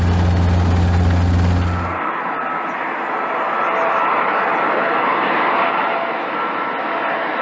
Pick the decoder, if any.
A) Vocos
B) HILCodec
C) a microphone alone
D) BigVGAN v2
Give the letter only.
C